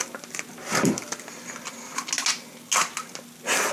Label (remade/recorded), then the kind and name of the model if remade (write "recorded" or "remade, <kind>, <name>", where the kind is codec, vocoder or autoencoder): recorded